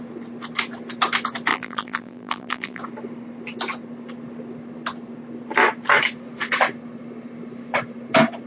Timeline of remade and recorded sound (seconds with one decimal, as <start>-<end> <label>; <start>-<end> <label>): 0.0-1.5 recorded; 1.5-2.8 remade; 2.8-8.5 recorded